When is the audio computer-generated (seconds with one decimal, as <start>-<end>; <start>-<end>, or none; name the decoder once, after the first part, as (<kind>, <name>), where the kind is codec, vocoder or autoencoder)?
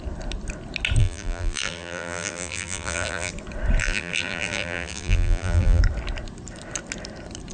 1.0-3.3 (vocoder, BigVGAN v2); 3.8-5.8